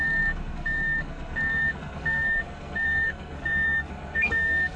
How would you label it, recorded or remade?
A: remade